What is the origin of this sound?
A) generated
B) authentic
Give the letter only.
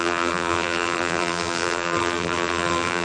A